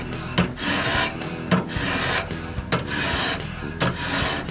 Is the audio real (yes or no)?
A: yes